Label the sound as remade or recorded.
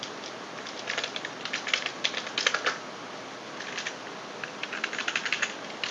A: recorded